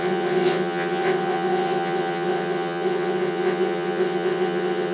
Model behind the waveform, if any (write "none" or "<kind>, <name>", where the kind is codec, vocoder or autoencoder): vocoder, WaveNeXt